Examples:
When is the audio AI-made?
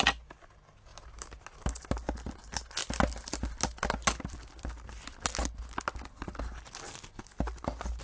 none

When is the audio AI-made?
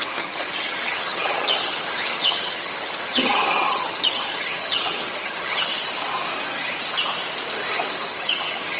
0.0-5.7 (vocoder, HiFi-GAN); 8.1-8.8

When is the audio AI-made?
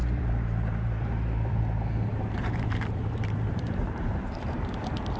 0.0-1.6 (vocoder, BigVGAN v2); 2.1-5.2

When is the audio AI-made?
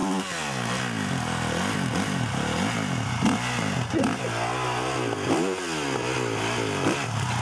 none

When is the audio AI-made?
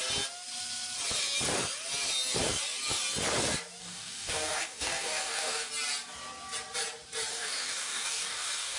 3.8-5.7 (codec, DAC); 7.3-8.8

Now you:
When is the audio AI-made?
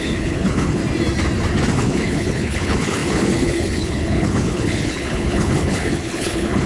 0.0-0.8 (codec, HILCodec); 1.7-6.7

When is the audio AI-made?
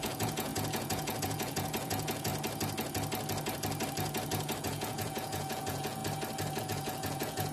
0.0-2.3 (vocoder, Vocos); 4.6-6.0; 6.6-7.5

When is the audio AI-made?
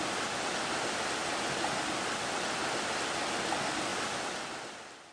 1.2-1.8 (vocoder, BigVGAN v2)